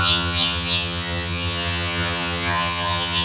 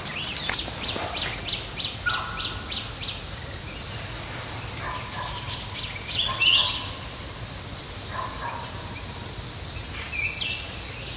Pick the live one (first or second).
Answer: second